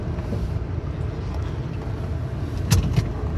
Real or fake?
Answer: real